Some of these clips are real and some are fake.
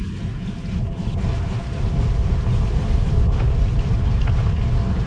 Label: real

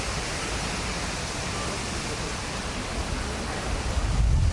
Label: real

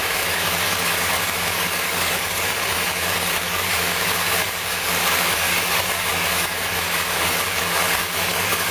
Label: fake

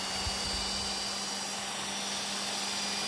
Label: real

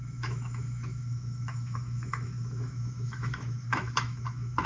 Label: fake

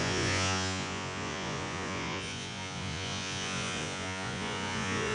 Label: fake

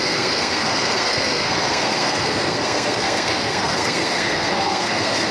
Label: fake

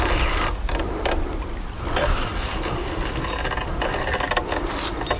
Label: real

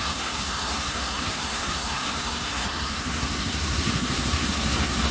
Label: fake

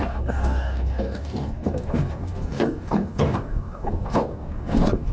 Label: fake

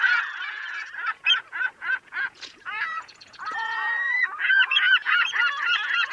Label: fake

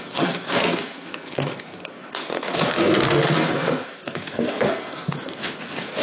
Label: fake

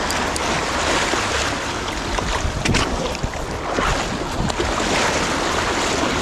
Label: real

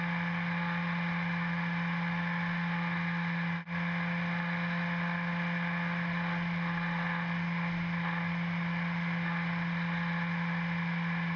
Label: real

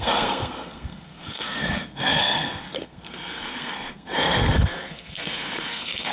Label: fake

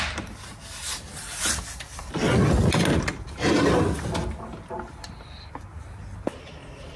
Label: real